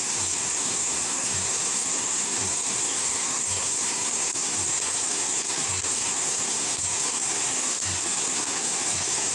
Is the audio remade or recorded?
remade